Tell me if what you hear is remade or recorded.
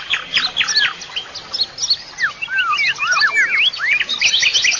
recorded